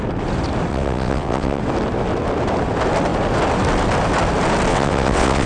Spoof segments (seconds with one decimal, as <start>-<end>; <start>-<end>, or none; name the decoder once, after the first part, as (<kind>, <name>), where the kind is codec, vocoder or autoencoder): 0.7-1.6 (vocoder, WaveNeXt); 4.7-5.5